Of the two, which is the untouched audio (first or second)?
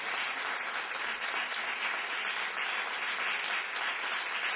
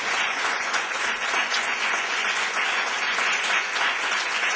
first